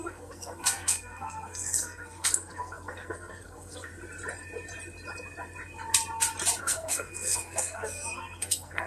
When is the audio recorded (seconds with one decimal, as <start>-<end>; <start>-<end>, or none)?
3.9-6.6